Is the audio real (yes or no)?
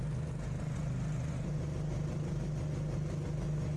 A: yes